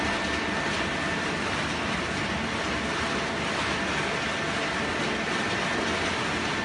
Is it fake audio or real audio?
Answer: real